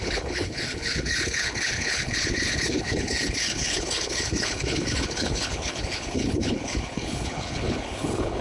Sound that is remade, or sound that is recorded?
remade